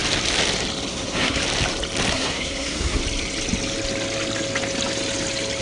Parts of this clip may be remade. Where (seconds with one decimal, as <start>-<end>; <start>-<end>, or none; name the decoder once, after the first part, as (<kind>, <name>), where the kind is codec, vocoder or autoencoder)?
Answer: 0.9-1.4 (codec, SNAC); 2.1-3.0